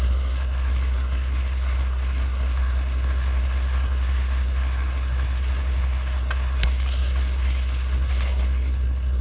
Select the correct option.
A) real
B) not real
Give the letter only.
B